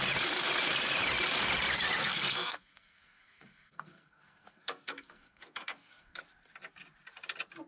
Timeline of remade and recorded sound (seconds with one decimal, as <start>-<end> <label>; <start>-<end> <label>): 0.0-2.0 recorded; 2.0-6.2 remade; 6.2-7.7 recorded